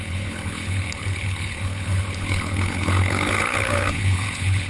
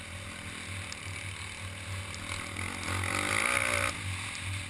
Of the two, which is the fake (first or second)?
first